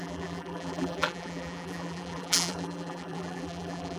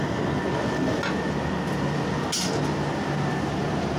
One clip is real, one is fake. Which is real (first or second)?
second